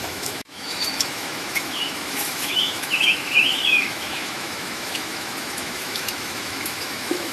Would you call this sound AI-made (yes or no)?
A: yes